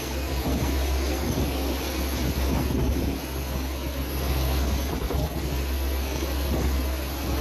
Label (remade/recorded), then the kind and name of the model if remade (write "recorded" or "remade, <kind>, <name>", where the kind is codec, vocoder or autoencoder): remade, codec, SNAC